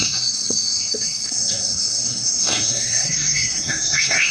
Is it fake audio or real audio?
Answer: fake